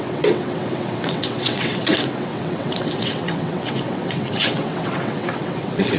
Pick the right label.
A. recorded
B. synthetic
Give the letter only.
B